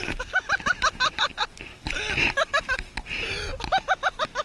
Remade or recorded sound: recorded